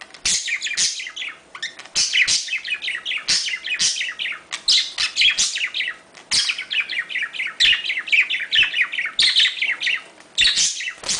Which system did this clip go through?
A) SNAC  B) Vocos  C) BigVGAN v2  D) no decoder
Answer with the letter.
D